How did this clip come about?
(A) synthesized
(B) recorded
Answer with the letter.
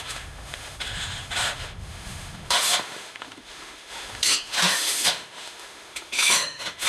A